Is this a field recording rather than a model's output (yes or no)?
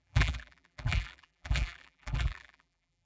no